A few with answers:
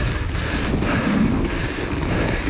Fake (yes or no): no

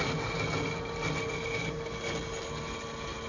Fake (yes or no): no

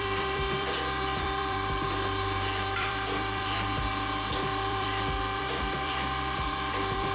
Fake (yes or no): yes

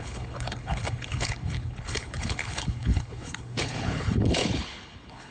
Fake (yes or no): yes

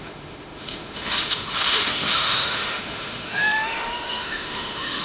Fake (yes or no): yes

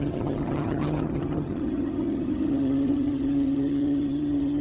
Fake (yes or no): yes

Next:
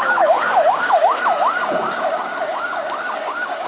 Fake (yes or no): yes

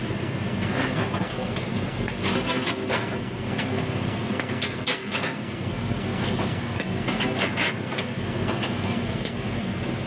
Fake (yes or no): yes